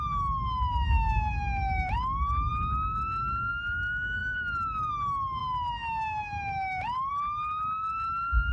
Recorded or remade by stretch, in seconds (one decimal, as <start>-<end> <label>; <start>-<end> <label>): 0.0-8.5 recorded